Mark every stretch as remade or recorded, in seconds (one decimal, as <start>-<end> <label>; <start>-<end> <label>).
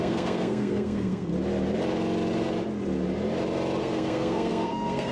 0.0-1.3 remade; 1.3-3.8 recorded; 3.8-5.1 remade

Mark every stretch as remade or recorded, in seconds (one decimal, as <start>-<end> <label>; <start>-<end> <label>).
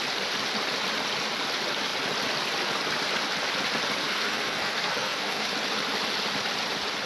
0.0-4.0 recorded; 4.0-5.5 remade; 5.5-7.1 recorded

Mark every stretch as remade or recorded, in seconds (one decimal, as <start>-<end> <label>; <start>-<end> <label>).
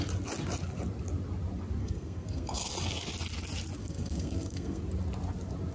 0.0-1.8 recorded; 1.8-2.7 remade; 2.7-3.8 recorded; 3.8-4.8 remade; 4.8-5.7 recorded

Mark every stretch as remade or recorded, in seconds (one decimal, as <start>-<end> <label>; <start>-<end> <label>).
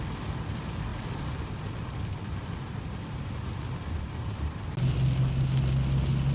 0.0-6.3 recorded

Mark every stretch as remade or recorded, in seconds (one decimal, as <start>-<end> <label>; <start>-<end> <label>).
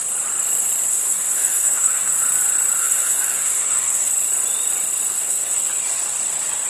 0.0-0.9 recorded; 0.9-2.1 remade; 2.1-2.8 recorded; 2.8-4.1 remade; 4.1-5.1 recorded; 5.1-5.7 remade; 5.7-6.7 recorded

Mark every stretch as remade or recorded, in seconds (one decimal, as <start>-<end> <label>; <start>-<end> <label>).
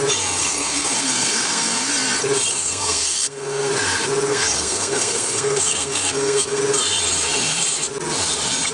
0.0-0.4 recorded; 0.4-1.9 remade; 1.9-2.5 recorded; 2.5-3.7 remade; 3.7-4.3 recorded; 4.3-6.6 remade; 6.6-8.7 recorded